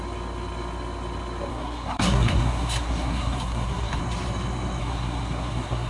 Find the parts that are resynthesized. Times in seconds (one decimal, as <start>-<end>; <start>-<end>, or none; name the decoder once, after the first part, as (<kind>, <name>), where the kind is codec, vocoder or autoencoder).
1.5-4.0 (codec, SNAC); 4.8-5.9

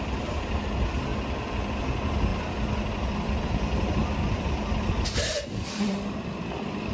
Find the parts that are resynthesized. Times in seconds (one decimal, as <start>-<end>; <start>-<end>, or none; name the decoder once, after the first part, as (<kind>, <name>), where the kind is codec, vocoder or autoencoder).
2.3-6.4 (vocoder, BigVGAN v2)

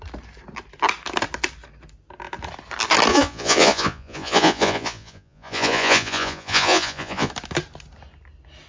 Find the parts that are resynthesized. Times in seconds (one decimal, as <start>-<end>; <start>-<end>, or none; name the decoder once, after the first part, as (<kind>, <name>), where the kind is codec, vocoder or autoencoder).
3.1-7.3 (vocoder, Vocos)

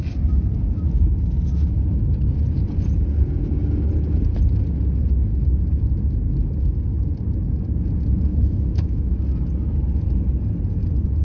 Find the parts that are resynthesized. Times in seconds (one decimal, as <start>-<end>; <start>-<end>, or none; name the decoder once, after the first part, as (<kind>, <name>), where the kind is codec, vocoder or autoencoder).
8.3-9.2 (autoencoder, DAC-VAE)

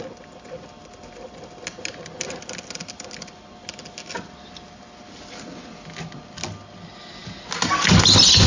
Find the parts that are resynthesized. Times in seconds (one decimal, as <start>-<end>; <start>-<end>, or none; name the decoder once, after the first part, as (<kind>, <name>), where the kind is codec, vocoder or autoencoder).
none

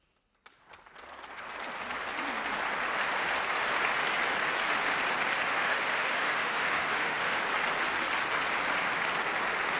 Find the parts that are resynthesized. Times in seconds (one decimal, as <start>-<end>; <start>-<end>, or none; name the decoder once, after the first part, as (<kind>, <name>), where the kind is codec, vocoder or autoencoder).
5.5-7.4 (autoencoder, DAC-VAE)